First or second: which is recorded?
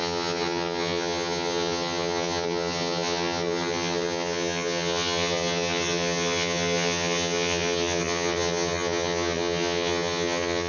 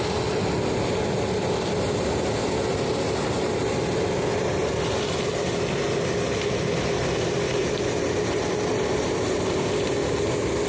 second